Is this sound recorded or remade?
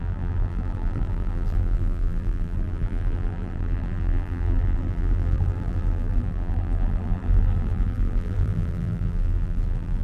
remade